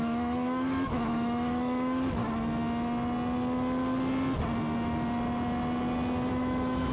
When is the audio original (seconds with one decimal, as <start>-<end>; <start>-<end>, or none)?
2.2-6.3